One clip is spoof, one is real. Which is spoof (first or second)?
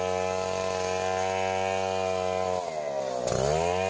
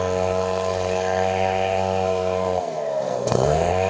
second